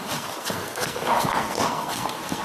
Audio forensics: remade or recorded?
remade